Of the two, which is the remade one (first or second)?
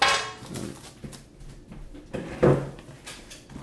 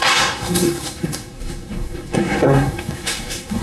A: second